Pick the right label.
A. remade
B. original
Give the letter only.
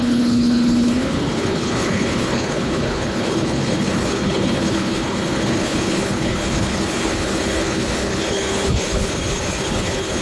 A